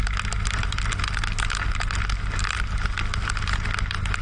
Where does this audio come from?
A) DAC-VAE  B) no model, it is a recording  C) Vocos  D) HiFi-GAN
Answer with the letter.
B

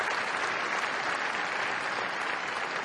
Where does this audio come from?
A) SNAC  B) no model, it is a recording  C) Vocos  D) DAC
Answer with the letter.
B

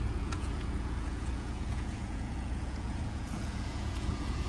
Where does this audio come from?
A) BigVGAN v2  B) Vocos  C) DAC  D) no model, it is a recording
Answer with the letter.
B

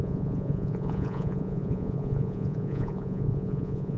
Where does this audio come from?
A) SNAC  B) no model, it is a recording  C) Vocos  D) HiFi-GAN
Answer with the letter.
C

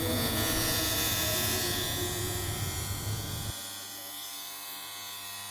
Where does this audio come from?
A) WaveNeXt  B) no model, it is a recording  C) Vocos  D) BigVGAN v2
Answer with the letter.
C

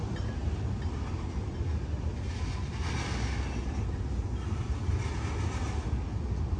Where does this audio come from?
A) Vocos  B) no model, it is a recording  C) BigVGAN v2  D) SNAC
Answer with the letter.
B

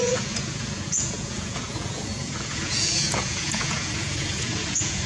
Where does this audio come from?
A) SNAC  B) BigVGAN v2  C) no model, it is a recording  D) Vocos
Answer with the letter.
D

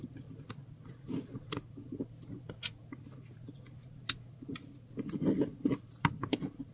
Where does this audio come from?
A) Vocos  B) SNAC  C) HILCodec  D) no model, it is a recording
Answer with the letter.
D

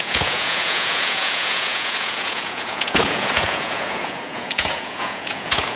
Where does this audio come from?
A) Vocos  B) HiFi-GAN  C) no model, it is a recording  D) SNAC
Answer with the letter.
A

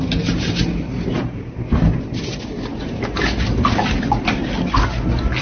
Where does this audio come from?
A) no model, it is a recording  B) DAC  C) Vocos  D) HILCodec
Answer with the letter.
A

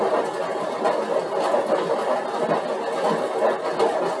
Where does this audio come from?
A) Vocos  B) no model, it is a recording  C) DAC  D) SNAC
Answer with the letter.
B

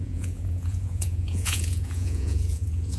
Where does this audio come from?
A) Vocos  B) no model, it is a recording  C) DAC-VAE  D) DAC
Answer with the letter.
A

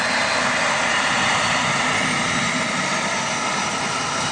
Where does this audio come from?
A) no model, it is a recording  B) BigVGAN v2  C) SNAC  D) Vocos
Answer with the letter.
A